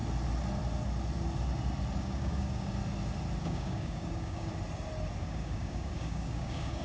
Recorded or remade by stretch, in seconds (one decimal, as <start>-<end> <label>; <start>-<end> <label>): 0.0-2.0 recorded; 2.0-2.8 remade; 2.8-3.4 recorded; 3.4-4.5 remade; 4.5-5.2 recorded; 5.2-6.8 remade